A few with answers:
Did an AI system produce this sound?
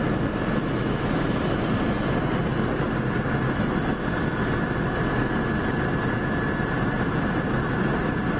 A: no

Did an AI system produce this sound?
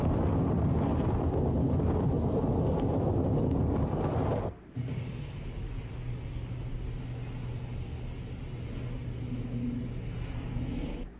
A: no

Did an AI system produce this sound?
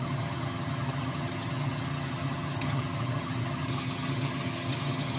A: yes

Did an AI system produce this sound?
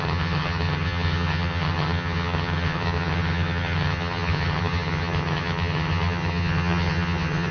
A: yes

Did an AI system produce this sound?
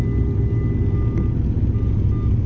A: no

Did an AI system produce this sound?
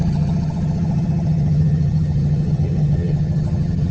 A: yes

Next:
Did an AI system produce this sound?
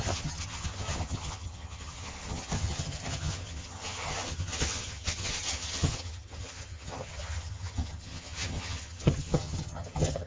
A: yes